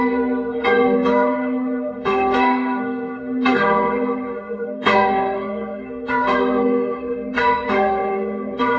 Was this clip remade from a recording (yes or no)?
yes